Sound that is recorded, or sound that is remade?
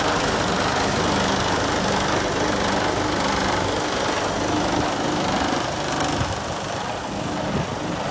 recorded